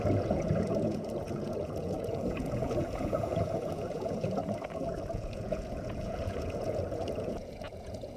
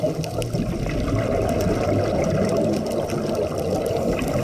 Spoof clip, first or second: first